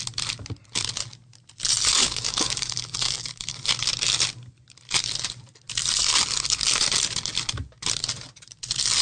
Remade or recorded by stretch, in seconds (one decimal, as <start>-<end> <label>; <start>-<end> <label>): 0.0-1.9 recorded; 1.9-3.7 remade; 3.7-9.0 recorded